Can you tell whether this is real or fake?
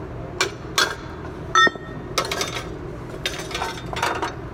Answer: real